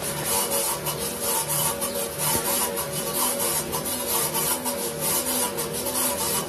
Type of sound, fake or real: real